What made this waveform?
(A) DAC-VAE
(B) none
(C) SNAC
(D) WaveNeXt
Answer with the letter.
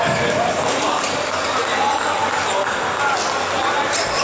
B